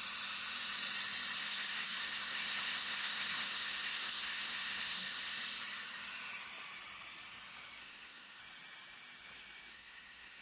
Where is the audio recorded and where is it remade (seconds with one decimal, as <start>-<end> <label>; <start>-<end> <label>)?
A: 0.0-1.4 recorded; 1.4-5.4 remade; 5.4-7.8 recorded; 7.8-8.4 remade; 8.4-9.7 recorded; 9.7-10.4 remade